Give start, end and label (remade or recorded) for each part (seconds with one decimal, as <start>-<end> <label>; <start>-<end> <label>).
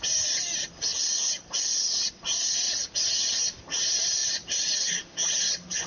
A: 0.0-0.9 recorded; 0.9-2.1 remade; 2.1-4.2 recorded; 4.2-4.9 remade; 4.9-5.9 recorded